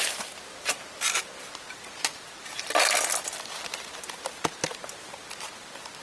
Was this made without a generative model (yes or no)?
yes